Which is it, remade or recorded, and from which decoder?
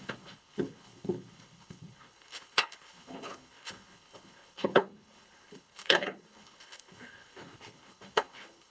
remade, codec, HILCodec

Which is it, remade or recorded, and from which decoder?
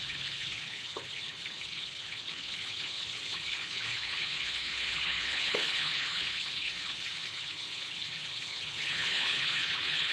remade, codec, HILCodec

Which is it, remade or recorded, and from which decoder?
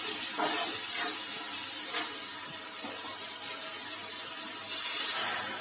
recorded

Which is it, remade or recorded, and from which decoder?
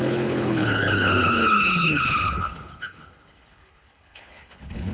remade, codec, HILCodec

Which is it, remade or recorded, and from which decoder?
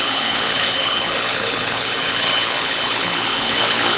remade, codec, HILCodec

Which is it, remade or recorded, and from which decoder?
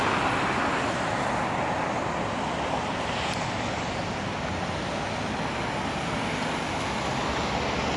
recorded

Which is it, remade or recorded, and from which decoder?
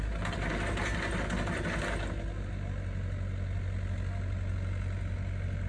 recorded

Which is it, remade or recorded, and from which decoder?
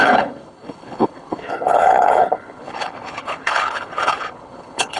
remade, codec, HILCodec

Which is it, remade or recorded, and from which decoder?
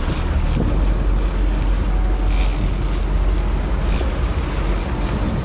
recorded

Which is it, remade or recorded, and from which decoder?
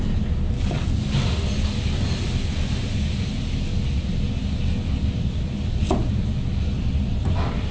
recorded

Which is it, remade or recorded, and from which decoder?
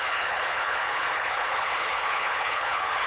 remade, codec, HILCodec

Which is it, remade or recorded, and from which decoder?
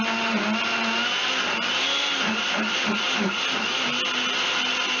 recorded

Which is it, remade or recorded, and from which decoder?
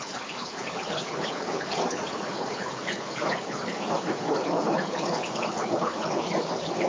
remade, codec, HILCodec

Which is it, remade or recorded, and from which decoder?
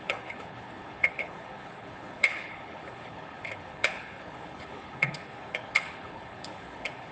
remade, codec, HILCodec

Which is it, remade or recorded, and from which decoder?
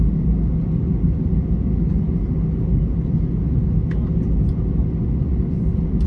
recorded